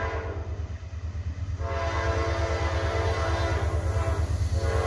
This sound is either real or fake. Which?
real